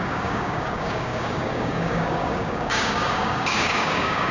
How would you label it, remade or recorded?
remade